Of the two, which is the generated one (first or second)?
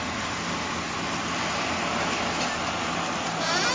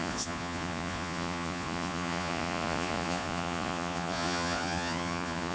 second